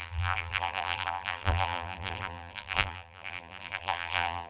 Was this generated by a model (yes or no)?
yes